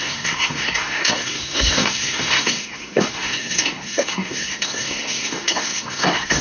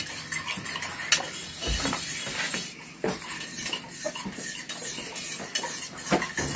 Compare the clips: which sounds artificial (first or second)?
first